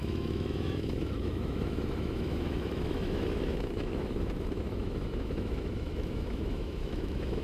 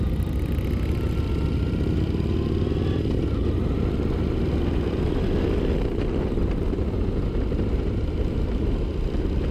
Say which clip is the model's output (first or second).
first